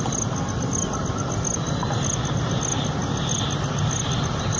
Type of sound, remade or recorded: recorded